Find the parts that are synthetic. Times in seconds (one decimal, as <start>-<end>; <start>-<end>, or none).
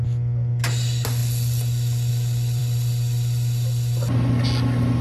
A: none